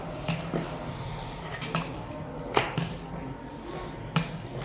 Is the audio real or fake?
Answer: real